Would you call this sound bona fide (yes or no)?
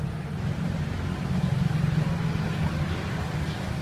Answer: yes